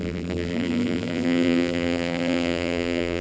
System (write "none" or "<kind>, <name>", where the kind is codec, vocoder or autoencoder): vocoder, BigVGAN v2